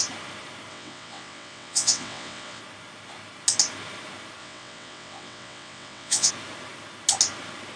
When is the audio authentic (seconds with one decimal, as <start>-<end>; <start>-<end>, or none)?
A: 0.0-0.7; 2.6-4.4; 6.3-7.8